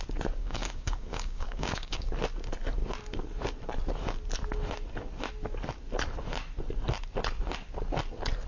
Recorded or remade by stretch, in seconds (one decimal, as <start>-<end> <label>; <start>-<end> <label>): 0.0-0.4 recorded; 0.4-2.1 remade; 2.1-8.5 recorded